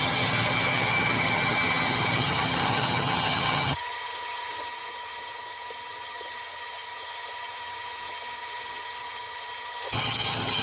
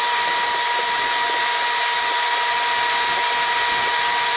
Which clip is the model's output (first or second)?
first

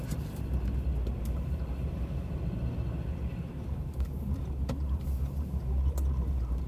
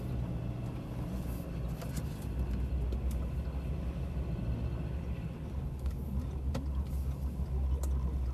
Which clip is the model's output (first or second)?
first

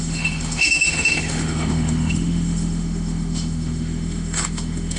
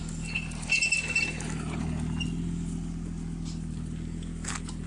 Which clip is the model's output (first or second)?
first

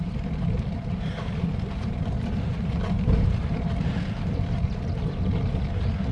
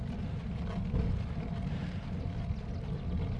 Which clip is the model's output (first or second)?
first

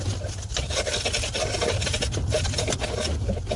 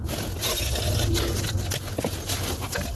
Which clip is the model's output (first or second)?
first